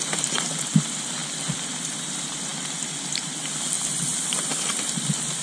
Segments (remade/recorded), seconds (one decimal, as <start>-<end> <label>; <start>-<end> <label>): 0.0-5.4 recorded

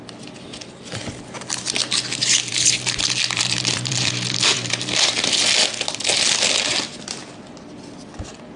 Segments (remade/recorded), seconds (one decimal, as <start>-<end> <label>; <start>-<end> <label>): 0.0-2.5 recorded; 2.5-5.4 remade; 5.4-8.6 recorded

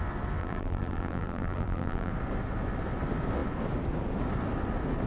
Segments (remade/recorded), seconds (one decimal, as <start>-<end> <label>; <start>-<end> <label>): 0.0-0.4 recorded; 0.4-2.1 remade; 2.1-5.1 recorded

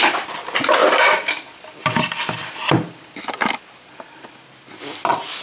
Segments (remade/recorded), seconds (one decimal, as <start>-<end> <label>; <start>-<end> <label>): 0.0-0.8 recorded; 0.8-3.5 remade; 3.5-5.4 recorded

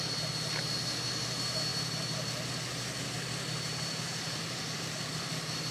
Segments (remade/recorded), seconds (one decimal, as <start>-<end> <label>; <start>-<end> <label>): 0.0-5.7 recorded

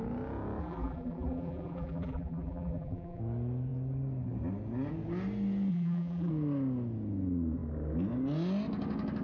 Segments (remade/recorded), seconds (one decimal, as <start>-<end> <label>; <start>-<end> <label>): 0.0-0.6 recorded; 0.6-3.2 remade; 3.2-5.7 recorded; 5.7-6.3 remade; 6.3-9.2 recorded